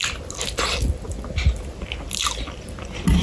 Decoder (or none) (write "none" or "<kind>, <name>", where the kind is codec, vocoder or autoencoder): none